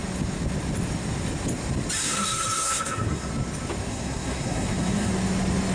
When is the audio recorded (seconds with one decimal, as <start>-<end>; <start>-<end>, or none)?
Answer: 0.0-2.0; 3.3-3.9; 5.1-5.7

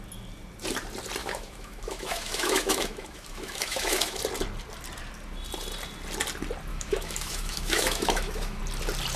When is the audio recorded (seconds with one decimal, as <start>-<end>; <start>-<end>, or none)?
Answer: 0.0-1.2; 4.2-6.7; 8.6-9.2